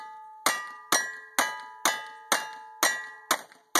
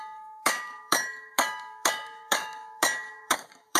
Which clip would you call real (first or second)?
first